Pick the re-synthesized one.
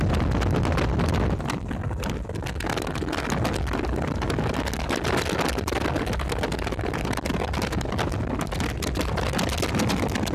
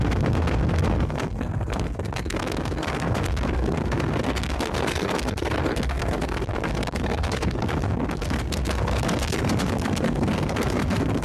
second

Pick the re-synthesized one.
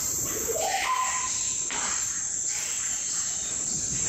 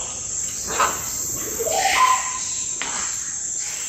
first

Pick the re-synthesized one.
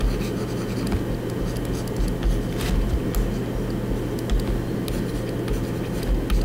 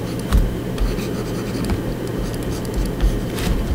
second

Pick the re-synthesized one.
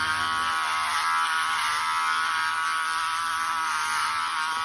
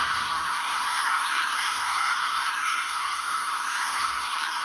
second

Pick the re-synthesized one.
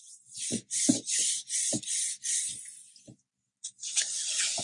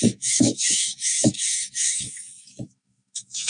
second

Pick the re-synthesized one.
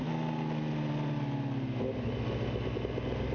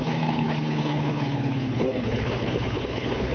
second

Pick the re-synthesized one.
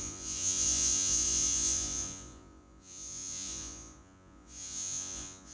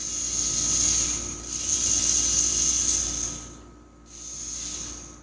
first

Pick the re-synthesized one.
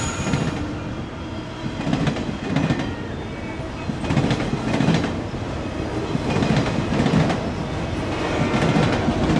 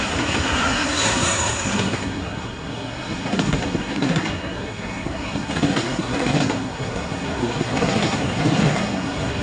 second